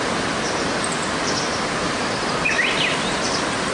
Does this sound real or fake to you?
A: real